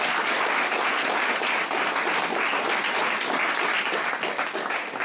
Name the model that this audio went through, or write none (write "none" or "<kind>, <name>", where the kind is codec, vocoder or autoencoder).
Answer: none